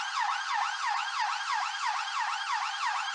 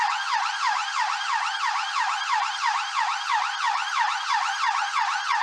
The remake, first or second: second